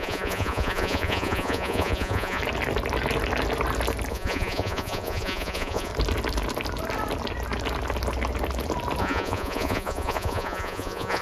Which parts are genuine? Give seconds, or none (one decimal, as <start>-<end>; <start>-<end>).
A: 2.4-4.1; 5.9-9.0